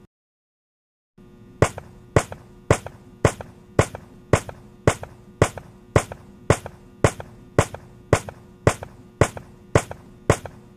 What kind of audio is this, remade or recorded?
recorded